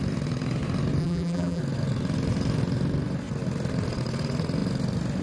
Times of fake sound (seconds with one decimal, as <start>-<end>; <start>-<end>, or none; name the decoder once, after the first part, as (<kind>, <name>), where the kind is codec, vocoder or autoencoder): 1.0-1.6 (vocoder, BigVGAN v2)